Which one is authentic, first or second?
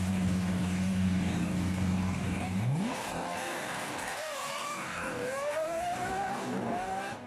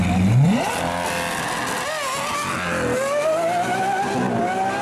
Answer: second